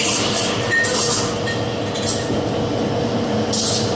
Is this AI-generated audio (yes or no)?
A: no